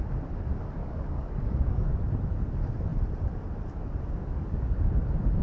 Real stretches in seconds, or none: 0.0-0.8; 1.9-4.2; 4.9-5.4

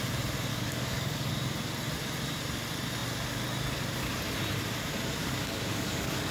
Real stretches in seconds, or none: 0.0-0.5; 1.3-5.2